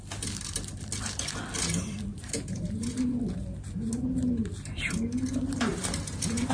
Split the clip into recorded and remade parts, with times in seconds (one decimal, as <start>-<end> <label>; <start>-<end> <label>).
0.0-2.1 recorded; 2.1-3.2 remade; 3.2-5.7 recorded; 5.7-6.5 remade